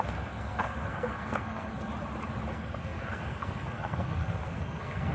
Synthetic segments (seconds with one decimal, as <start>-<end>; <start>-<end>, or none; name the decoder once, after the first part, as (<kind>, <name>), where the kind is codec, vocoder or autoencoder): 0.0-1.9 (codec, SNAC); 2.5-5.1